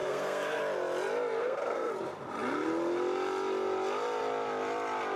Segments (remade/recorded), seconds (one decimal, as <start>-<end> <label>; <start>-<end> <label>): 0.0-0.6 remade; 0.6-1.4 recorded; 1.4-1.9 remade; 1.9-5.2 recorded